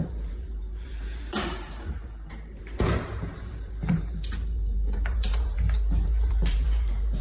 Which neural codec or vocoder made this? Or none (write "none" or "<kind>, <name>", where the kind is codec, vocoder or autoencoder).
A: vocoder, BigVGAN v2